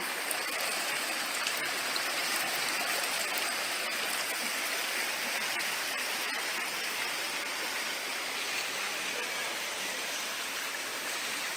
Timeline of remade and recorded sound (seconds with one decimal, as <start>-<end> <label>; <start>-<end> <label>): 0.0-10.9 recorded; 10.9-11.6 remade